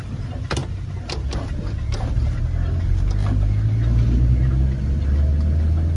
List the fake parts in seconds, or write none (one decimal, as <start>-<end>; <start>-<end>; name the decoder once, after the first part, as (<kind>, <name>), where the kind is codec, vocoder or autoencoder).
none